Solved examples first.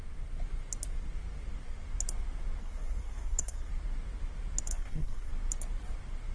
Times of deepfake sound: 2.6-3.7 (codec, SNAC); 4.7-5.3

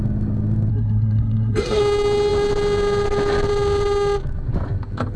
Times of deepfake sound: 0.7-1.8 (codec, SNAC)

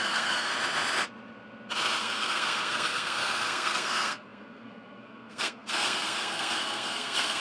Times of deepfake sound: 0.0-0.5 (codec, SNAC); 2.0-7.4

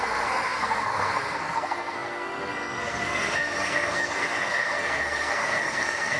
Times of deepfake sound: 0.0-6.2 (codec, SNAC)

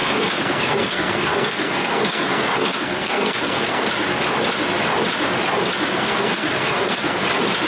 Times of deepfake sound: 0.0-3.9 (codec, SNAC); 5.9-7.2

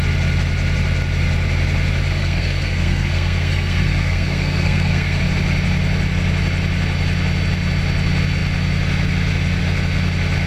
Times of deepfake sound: 2.2-5.2 (codec, SNAC)

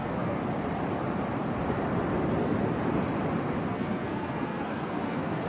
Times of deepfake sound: 0.0-0.4 (codec, SNAC); 3.7-5.5